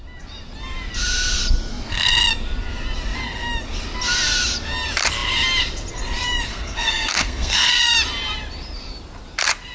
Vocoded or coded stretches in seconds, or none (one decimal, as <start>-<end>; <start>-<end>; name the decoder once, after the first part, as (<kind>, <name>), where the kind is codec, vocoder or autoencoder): 1.7-2.2 (codec, SNAC); 6.5-7.7